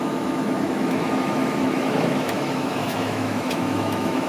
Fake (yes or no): yes